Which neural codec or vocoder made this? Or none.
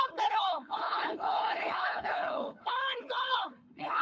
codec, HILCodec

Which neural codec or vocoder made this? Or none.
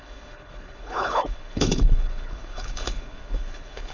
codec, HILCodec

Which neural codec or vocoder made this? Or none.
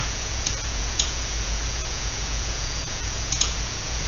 vocoder, Vocos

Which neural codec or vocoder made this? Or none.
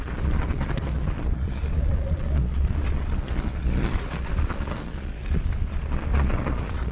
vocoder, Vocos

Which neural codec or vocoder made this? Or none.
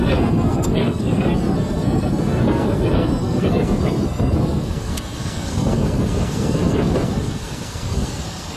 codec, SNAC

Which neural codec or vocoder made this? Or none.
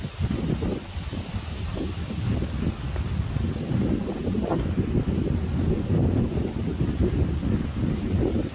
none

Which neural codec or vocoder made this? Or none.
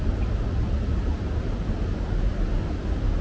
none